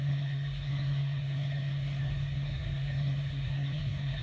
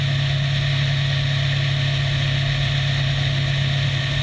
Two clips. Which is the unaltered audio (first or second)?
second